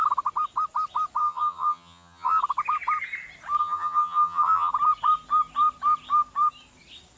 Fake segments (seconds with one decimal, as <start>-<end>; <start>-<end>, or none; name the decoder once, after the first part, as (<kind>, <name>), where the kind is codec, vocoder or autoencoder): 1.2-2.4 (vocoder, HiFi-GAN); 3.6-4.7